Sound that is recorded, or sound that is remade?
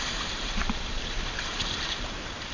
remade